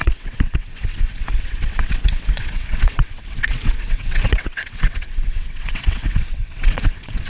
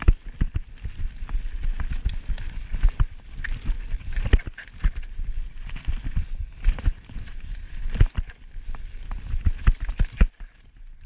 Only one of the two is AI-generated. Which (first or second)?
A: first